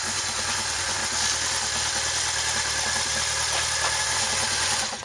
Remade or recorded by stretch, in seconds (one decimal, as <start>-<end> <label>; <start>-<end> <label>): 0.0-1.0 remade; 1.0-4.0 recorded; 4.0-5.0 remade